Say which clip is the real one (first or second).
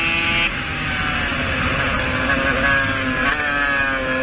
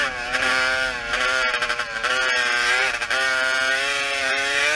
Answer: first